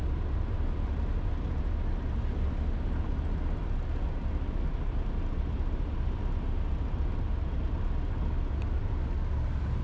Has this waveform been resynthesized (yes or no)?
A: no